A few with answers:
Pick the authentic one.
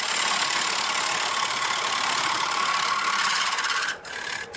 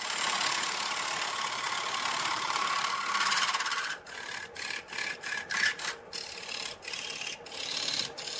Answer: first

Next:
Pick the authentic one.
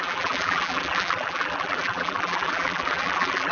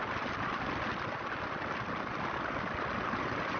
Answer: second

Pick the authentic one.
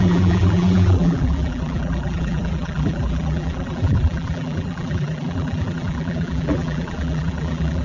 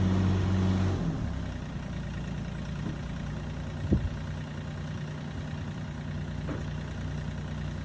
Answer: second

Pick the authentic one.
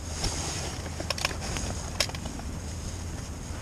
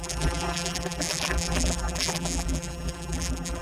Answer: first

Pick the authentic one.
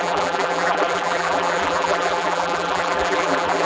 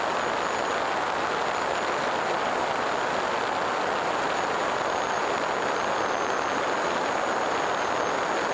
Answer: second